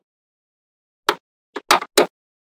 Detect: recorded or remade recorded